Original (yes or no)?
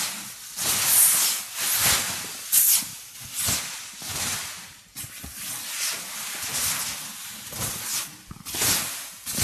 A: yes